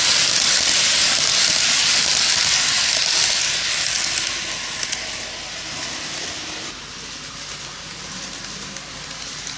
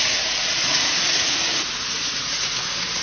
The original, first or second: first